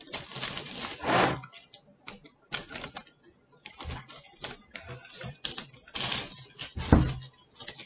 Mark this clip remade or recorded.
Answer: recorded